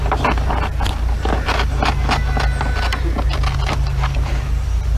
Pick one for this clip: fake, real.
real